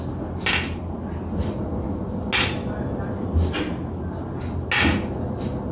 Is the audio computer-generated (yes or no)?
no